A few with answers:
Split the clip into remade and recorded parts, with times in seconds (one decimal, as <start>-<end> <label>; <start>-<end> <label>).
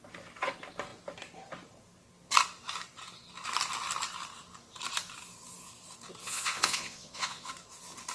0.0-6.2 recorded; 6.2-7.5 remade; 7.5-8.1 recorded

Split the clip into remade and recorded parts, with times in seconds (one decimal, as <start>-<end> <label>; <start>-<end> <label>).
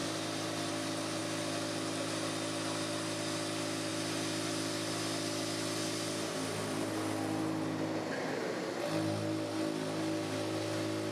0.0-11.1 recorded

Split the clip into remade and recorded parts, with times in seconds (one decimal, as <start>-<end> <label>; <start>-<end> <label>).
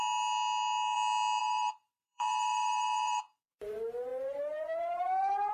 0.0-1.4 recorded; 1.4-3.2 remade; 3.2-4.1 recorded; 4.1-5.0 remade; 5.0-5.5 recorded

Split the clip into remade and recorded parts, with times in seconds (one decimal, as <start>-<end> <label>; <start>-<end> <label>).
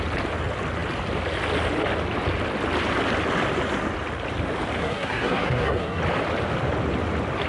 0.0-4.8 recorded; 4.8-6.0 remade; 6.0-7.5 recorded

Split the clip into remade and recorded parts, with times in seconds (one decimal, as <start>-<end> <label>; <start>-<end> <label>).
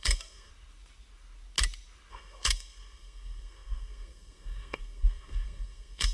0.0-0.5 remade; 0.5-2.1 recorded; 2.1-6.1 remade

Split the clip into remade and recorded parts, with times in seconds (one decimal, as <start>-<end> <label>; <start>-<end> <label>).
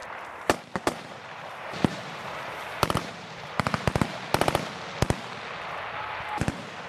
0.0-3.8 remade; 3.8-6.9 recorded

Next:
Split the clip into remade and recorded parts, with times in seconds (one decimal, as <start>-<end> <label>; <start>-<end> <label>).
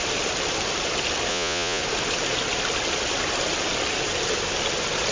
0.0-1.3 recorded; 1.3-1.8 remade; 1.8-5.1 recorded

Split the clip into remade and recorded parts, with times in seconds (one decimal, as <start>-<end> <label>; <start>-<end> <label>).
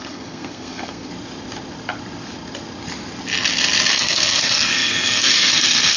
0.0-1.1 remade; 1.1-3.9 recorded; 3.9-6.0 remade